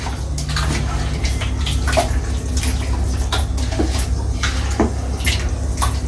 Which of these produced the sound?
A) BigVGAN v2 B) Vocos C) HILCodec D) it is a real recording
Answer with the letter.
D